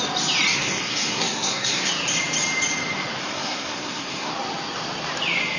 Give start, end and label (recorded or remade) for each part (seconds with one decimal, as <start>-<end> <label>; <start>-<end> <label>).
0.0-0.5 recorded; 0.5-1.9 remade; 1.9-3.2 recorded; 3.2-4.3 remade; 4.3-5.6 recorded